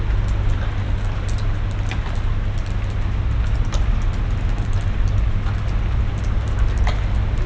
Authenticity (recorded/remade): recorded